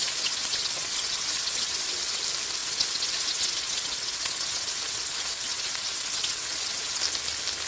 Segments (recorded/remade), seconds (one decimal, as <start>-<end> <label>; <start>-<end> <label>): 0.0-2.2 remade; 2.2-2.6 recorded; 2.6-7.0 remade; 7.0-7.7 recorded